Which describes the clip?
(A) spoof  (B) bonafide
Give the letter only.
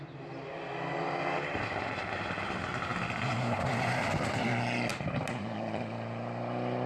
B